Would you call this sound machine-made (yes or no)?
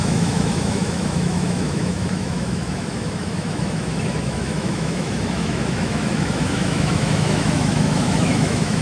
yes